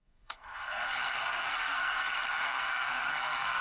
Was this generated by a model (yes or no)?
yes